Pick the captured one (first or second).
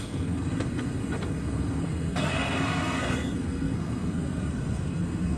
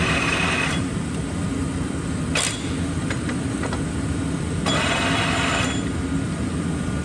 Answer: second